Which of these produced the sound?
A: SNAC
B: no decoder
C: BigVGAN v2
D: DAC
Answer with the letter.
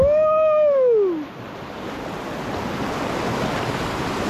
B